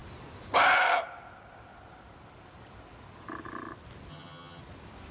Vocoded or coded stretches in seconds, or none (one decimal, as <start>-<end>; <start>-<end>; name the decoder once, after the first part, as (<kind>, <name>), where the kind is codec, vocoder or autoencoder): 4.1-4.6 (vocoder, HiFi-GAN)